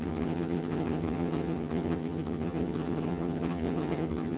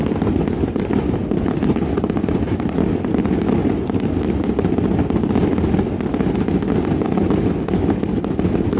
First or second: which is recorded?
second